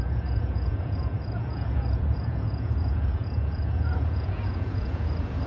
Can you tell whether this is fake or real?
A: fake